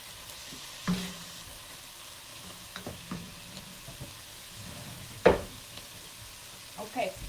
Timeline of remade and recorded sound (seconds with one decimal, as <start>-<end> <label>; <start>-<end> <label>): 0.0-2.3 recorded; 2.3-3.3 remade; 3.3-4.3 recorded; 4.3-6.0 remade; 6.0-7.3 recorded